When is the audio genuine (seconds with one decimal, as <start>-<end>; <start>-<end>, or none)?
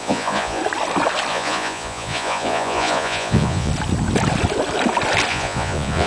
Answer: 0.6-1.3; 3.7-5.3